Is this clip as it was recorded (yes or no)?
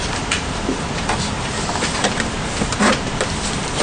no